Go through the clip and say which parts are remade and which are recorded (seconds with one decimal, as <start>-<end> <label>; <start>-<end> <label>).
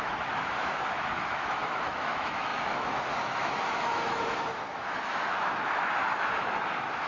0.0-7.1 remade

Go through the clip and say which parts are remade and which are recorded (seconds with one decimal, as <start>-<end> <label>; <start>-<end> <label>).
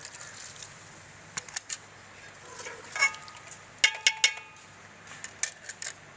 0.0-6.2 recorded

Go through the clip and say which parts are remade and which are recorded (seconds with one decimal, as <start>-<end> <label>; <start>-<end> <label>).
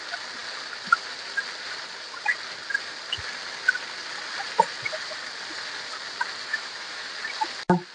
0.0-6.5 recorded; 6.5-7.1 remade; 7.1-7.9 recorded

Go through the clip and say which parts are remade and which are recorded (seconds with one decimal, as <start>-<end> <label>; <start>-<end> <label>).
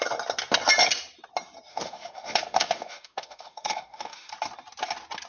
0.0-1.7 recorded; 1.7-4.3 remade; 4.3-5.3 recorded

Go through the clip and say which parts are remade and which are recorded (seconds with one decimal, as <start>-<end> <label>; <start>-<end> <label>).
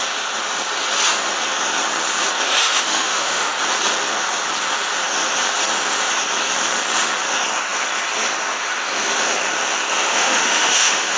0.0-2.6 recorded; 2.6-3.5 remade; 3.5-10.1 recorded; 10.1-11.2 remade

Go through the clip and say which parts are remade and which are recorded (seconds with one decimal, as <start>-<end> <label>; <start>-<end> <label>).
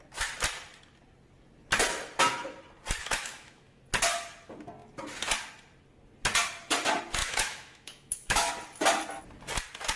0.0-3.0 recorded; 3.0-3.8 remade; 3.8-7.2 recorded; 7.2-8.5 remade; 8.5-10.0 recorded